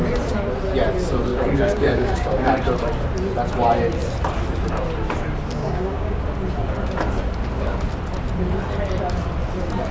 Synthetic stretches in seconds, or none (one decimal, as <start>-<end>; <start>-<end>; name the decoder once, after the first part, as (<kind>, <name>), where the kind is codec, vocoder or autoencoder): 1.3-2.5 (codec, DAC); 5.6-6.2

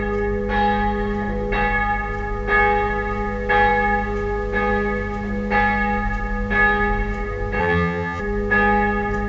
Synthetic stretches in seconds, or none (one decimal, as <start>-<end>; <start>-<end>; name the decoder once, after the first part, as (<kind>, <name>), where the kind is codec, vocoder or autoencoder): 7.6-8.2 (vocoder, HiFi-GAN)

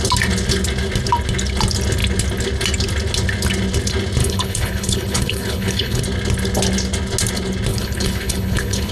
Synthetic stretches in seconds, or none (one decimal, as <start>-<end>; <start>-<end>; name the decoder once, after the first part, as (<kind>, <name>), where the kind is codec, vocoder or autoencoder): 4.2-6.0 (codec, HILCodec); 7.7-8.9

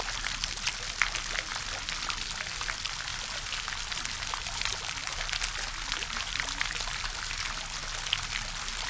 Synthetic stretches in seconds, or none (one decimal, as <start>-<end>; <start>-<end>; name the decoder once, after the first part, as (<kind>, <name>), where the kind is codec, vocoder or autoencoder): 3.1-7.4 (vocoder, BigVGAN v2)

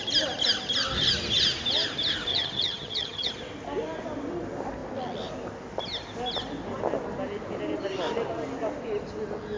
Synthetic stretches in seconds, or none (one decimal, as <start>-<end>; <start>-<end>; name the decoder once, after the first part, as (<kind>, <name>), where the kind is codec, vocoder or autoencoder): 2.3-3.3 (vocoder, HiFi-GAN)

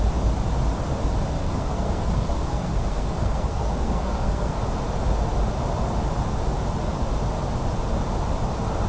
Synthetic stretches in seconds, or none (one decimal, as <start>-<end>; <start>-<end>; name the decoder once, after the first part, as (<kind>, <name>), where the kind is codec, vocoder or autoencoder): 1.4-4.6 (codec, SNAC)

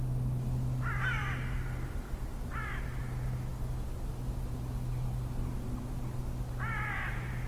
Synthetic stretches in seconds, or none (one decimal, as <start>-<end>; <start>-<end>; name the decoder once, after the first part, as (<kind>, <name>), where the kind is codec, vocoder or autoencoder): none

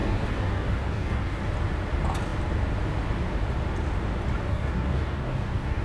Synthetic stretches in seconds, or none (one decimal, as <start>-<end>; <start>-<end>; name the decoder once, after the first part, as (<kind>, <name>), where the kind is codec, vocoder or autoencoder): 0.0-1.4 (codec, DAC); 4.5-5.8